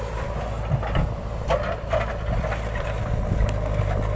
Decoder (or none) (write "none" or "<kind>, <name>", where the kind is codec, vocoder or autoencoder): none